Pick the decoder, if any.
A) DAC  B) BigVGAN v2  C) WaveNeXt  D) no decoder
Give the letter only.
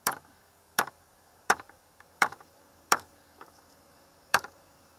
A